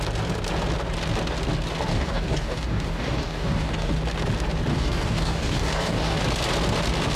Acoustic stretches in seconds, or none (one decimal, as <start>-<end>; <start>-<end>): 0.0-1.9; 3.9-4.7; 6.2-7.2